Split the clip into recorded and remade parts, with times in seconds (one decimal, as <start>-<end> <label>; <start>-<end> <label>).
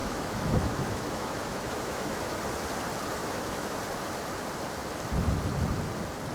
0.0-2.4 remade; 2.4-3.2 recorded; 3.2-3.8 remade; 3.8-6.3 recorded